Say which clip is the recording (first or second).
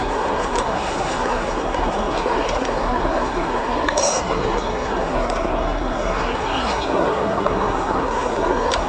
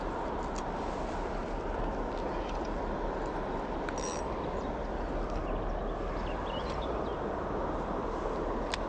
second